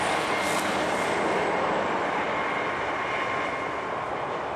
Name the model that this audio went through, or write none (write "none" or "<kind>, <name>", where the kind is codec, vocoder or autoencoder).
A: none